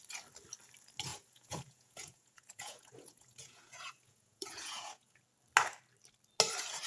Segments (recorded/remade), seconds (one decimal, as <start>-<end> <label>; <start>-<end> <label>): 0.0-1.1 recorded; 1.1-5.2 remade; 5.2-6.9 recorded